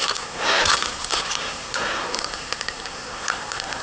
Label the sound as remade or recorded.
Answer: remade